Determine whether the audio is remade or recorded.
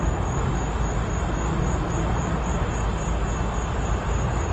recorded